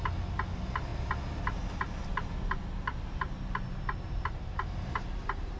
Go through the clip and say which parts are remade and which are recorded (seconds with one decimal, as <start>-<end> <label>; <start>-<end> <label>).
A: 0.0-5.6 recorded